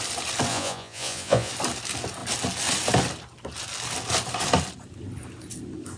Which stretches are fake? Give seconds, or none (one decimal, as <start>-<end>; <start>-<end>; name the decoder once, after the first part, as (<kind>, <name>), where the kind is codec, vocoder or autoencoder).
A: 0.5-1.5 (vocoder, Vocos)